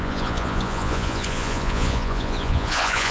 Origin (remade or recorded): remade